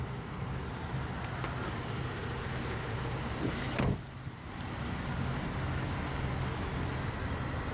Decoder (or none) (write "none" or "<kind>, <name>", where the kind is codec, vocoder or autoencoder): none